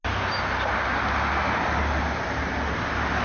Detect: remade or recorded recorded